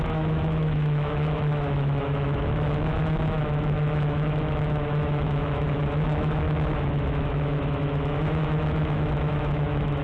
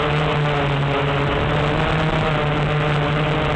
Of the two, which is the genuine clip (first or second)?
second